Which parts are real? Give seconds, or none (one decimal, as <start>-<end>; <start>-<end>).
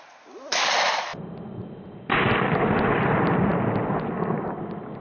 0.0-5.0